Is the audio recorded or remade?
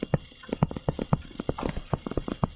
recorded